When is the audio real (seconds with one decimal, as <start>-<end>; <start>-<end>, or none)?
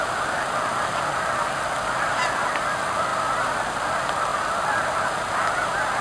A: 0.0-3.1; 3.8-6.0